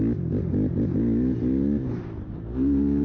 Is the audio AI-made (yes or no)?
no